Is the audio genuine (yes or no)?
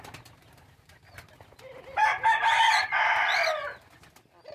yes